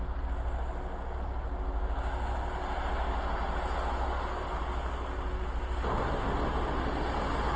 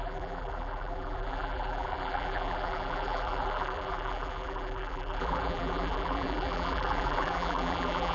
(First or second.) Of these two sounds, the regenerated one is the second